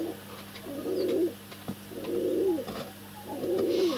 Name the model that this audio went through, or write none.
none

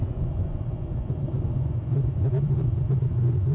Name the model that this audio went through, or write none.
vocoder, Vocos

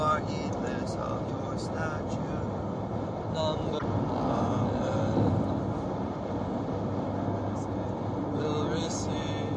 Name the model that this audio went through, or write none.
none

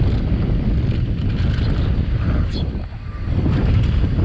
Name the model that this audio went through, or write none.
none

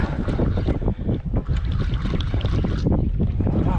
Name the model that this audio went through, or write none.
none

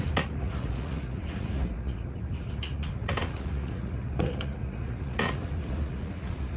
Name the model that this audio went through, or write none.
vocoder, Vocos